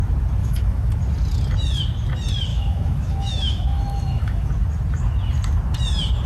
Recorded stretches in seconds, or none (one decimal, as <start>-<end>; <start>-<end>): 0.0-0.4; 0.9-2.5; 4.5-6.3